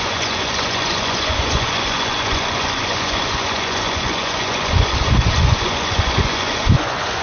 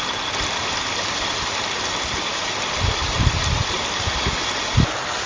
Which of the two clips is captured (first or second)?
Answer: second